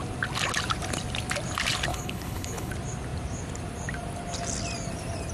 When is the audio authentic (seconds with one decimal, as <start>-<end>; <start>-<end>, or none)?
0.0-1.9; 2.7-5.3

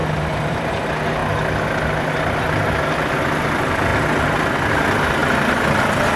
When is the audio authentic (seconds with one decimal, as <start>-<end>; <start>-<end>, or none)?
0.7-6.2

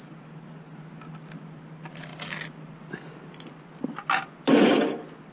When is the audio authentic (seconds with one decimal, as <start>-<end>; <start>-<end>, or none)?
0.0-5.3

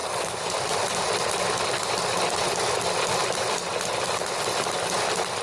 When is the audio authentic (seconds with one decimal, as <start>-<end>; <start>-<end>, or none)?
1.1-5.4

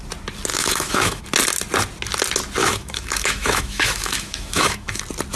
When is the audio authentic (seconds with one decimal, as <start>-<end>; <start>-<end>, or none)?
0.0-0.5; 1.2-2.6; 5.0-5.4

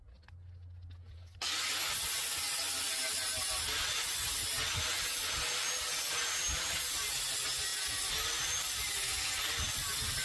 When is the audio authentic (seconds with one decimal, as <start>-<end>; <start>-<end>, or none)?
0.0-10.2

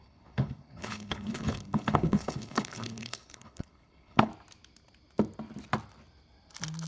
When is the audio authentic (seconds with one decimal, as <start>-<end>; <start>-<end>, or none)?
4.3-6.9

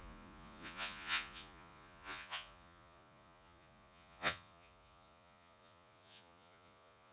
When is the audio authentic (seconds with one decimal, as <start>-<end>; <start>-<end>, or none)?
none